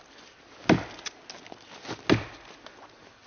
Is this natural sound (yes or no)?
yes